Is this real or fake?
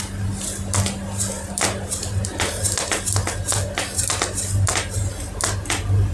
real